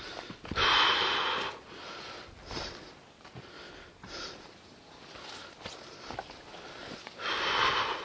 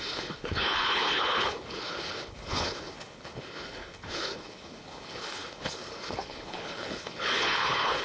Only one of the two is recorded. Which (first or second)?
first